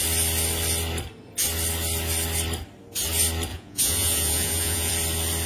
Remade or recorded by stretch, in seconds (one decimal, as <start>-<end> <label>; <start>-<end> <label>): 0.0-3.5 recorded; 3.5-4.9 remade; 4.9-5.5 recorded